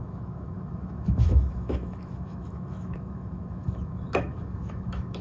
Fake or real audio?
fake